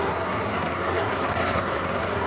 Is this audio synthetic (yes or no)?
yes